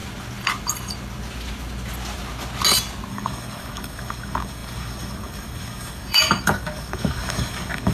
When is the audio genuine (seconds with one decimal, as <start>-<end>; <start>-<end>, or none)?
0.0-3.1